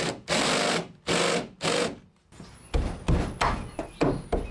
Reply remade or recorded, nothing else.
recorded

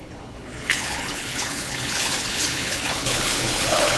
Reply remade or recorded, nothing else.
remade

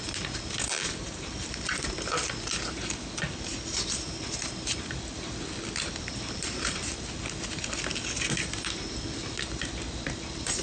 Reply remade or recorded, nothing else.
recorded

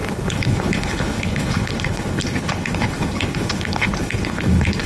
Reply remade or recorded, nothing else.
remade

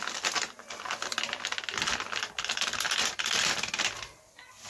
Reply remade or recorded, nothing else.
recorded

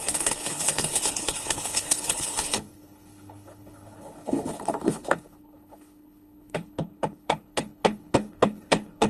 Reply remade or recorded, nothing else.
remade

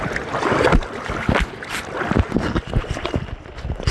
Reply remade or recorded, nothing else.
recorded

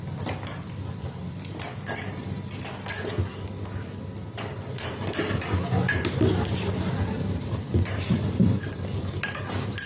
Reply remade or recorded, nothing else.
recorded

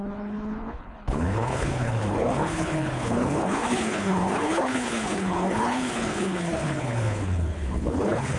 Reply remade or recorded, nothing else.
remade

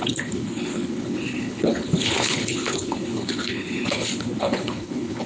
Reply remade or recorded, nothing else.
remade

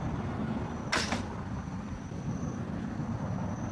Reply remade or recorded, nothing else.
recorded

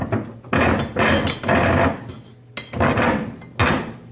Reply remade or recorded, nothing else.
recorded